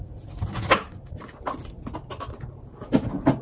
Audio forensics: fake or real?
real